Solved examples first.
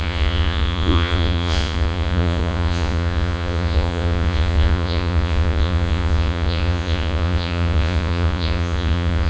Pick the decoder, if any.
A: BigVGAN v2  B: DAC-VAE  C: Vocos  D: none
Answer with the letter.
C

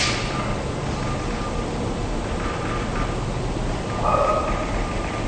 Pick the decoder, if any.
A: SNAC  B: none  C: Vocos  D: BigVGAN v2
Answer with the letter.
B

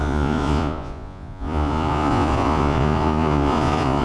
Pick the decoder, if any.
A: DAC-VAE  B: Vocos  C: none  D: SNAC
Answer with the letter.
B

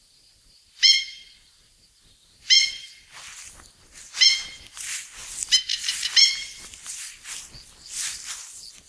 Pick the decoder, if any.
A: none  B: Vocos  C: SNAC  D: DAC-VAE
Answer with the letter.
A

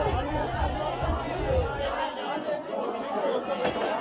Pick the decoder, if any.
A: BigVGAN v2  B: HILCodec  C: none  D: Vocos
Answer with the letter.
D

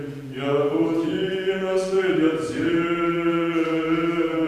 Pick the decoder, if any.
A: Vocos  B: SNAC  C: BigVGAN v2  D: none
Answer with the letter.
A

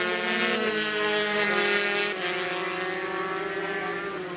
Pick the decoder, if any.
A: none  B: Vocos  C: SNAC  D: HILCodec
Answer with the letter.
A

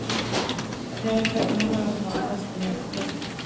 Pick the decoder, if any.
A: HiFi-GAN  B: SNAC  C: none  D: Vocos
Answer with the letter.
C